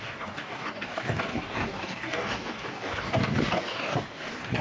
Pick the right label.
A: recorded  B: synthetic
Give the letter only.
B